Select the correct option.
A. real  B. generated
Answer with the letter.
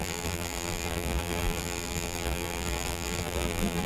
B